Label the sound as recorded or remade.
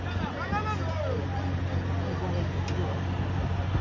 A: recorded